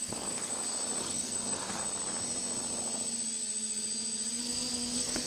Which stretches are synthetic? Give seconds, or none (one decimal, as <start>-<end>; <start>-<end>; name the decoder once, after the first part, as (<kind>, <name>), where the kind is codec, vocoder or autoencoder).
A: 0.0-0.5 (codec, SNAC); 1.0-1.8; 4.4-5.3